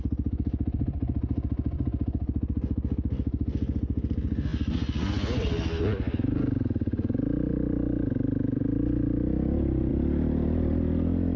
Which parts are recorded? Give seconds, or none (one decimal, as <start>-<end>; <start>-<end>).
0.0-7.5; 8.6-9.9

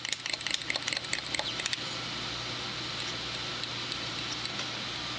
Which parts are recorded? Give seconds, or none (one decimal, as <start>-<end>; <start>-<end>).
0.0-5.2

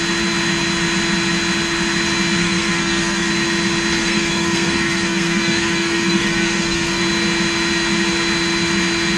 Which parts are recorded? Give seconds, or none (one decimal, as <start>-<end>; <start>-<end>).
0.0-2.4; 3.3-4.0; 7.0-9.2

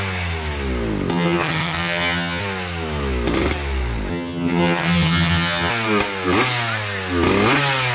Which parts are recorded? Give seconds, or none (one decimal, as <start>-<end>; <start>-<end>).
0.0-1.1; 2.4-4.1; 5.7-7.9

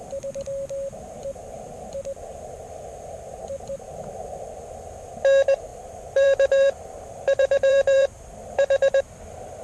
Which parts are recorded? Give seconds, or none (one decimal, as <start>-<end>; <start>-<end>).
0.0-5.7; 9.0-9.6

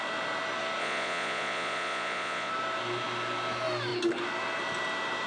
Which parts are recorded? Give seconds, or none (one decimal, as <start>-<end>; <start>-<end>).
0.0-0.8; 2.5-5.3